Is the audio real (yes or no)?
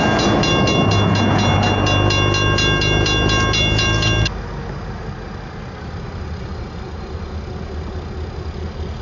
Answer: yes